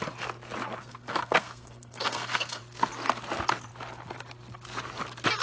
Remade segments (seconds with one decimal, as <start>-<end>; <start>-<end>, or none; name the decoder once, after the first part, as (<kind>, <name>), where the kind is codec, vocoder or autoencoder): 0.8-2.6 (codec, SNAC)